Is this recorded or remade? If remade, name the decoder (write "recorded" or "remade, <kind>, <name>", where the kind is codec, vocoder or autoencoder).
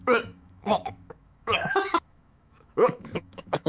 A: remade, autoencoder, DAC-VAE